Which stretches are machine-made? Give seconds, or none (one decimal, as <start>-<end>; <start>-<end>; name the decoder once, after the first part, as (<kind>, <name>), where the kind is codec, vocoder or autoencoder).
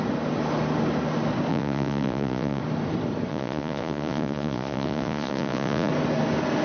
1.5-2.6 (vocoder, Vocos); 3.3-5.9